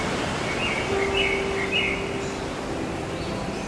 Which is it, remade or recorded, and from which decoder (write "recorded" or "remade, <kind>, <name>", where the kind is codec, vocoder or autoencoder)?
recorded